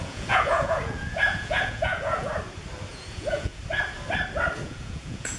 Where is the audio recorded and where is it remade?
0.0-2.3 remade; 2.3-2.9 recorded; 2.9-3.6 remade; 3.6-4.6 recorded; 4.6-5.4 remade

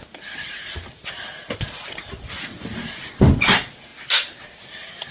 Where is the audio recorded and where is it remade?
0.0-5.1 recorded

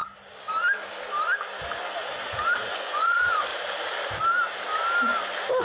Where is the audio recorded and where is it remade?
0.0-2.7 recorded; 2.7-3.5 remade; 3.5-5.6 recorded

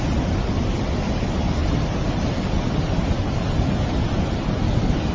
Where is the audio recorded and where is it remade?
0.0-5.1 recorded

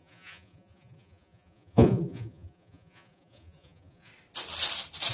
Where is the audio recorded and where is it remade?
0.0-4.1 remade; 4.1-5.1 recorded

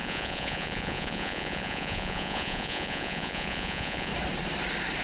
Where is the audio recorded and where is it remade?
0.0-4.1 remade; 4.1-5.0 recorded